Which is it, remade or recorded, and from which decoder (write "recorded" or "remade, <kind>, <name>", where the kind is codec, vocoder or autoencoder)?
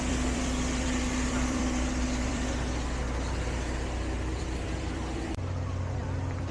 remade, vocoder, BigVGAN v2